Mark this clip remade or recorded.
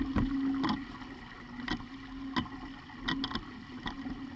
recorded